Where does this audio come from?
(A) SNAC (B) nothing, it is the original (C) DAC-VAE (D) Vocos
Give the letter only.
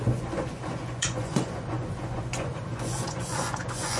D